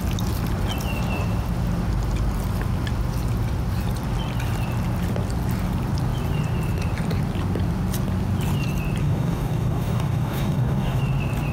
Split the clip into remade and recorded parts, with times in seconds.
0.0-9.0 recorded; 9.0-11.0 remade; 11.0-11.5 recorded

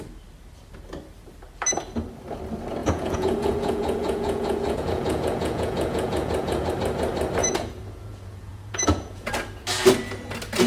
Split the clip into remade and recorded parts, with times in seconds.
0.0-2.8 recorded; 2.8-6.7 remade; 6.7-7.4 recorded; 7.4-9.3 remade; 9.3-10.7 recorded

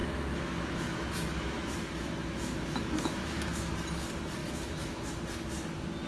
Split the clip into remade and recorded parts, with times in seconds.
0.0-3.7 remade; 3.7-4.4 recorded; 4.4-5.1 remade; 5.1-6.1 recorded

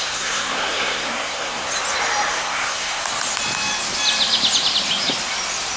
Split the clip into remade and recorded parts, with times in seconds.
0.0-1.7 remade; 1.7-2.3 recorded; 2.3-3.0 remade; 3.0-5.8 recorded

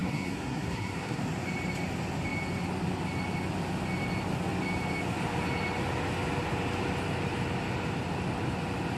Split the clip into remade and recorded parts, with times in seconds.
0.0-1.2 remade; 1.2-9.0 recorded